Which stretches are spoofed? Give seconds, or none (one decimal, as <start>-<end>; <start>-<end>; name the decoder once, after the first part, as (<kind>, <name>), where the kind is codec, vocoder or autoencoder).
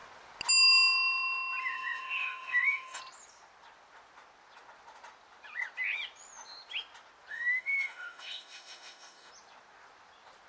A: 1.6-3.0 (autoencoder, DAC-VAE); 7.3-9.3